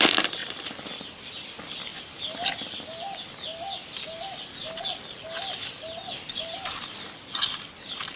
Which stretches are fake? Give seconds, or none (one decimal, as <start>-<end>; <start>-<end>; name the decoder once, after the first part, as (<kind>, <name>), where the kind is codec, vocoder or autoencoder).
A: none